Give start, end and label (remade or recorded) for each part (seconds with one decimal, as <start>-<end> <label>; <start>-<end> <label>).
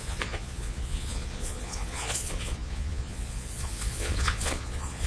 0.0-5.1 remade